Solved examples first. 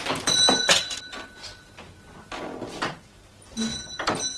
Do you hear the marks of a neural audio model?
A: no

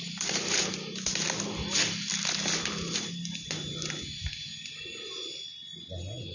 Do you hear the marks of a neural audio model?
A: no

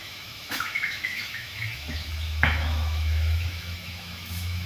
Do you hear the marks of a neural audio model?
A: yes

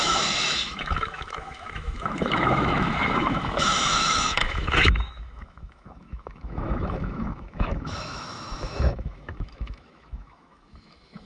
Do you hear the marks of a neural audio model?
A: yes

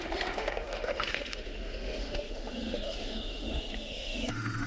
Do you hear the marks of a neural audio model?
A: yes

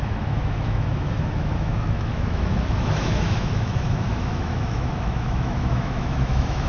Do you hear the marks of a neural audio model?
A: yes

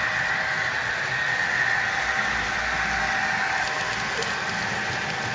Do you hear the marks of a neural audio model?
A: no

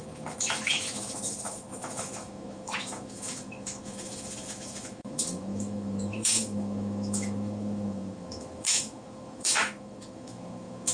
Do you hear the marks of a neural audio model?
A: yes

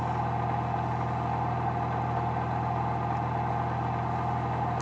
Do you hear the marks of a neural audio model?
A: no